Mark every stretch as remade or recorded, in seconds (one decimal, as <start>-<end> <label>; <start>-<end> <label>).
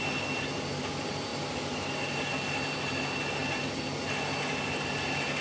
0.0-5.4 recorded